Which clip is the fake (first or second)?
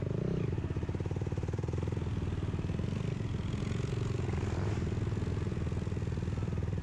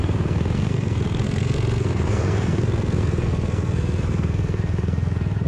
second